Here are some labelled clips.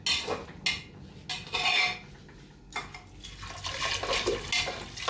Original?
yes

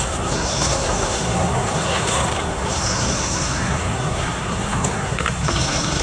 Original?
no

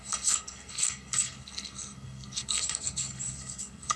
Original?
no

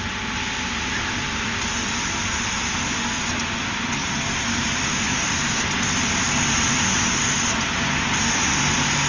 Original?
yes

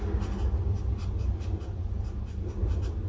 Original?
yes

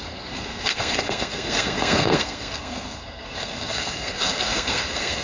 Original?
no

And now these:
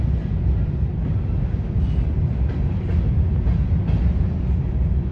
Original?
yes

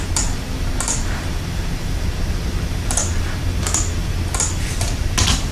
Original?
yes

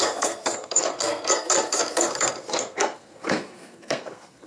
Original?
no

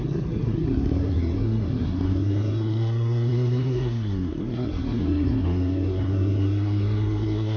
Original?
no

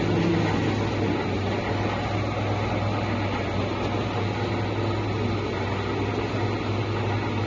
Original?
yes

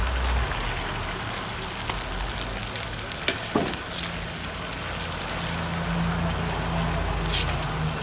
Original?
yes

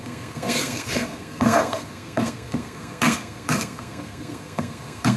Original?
no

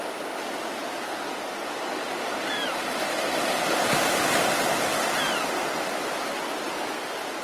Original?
yes